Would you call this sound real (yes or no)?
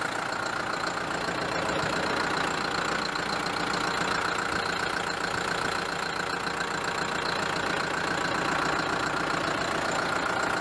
yes